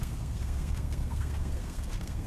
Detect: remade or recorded remade